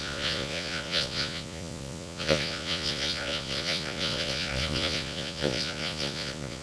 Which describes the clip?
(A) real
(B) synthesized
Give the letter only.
B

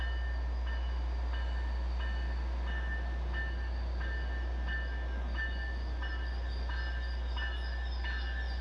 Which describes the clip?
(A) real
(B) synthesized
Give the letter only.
A